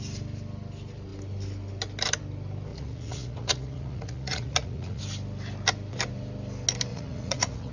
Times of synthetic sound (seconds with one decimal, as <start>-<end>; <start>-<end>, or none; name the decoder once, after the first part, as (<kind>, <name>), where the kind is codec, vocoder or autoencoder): 2.7-5.0 (vocoder, Vocos); 6.9-7.7